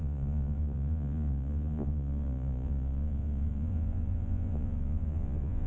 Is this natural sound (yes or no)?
no